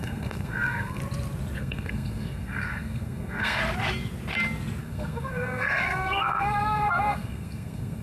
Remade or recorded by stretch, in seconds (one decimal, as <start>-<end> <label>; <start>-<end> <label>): 0.0-1.0 remade; 1.0-1.6 recorded; 1.6-3.6 remade; 3.6-4.8 recorded; 4.8-8.0 remade